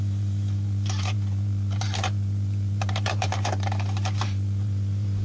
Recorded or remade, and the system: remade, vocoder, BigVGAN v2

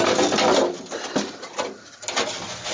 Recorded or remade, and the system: recorded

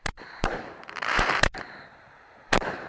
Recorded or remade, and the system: remade, vocoder, BigVGAN v2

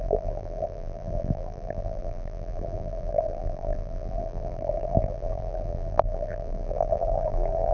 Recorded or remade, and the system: remade, vocoder, BigVGAN v2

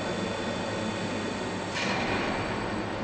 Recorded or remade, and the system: recorded